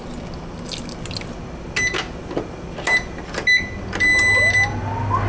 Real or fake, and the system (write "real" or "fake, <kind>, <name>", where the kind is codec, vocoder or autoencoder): real